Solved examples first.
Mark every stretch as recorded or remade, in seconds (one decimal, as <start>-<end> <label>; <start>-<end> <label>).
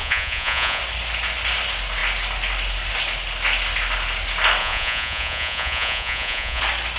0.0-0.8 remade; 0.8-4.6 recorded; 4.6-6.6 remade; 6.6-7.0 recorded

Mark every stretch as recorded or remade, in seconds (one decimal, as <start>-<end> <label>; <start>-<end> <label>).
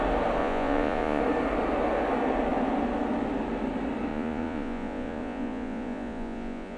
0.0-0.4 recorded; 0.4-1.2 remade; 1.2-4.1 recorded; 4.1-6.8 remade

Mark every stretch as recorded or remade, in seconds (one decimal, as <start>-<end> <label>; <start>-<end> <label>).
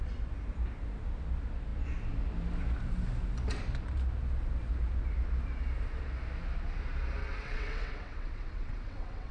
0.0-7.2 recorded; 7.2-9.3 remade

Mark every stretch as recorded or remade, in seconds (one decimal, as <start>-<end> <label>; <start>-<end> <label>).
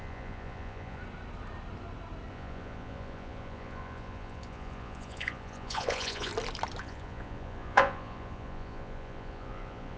0.0-1.0 remade; 1.0-2.3 recorded; 2.3-6.3 remade; 6.3-6.8 recorded; 6.8-10.0 remade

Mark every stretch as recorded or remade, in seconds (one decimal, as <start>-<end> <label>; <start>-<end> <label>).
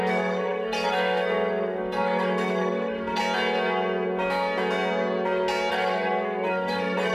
0.0-3.2 remade; 3.2-5.7 recorded; 5.7-7.1 remade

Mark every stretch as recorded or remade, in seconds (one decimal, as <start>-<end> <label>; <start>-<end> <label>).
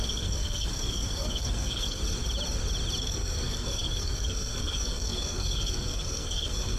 0.0-2.0 remade; 2.0-3.0 recorded; 3.0-6.8 remade